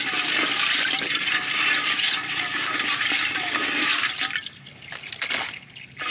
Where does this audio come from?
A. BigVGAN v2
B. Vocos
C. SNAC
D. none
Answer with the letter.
D